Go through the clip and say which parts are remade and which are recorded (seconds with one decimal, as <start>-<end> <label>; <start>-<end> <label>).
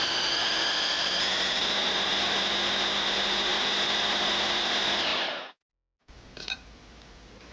0.0-7.5 recorded